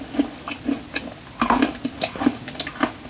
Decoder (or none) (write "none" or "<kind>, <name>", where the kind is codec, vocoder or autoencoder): none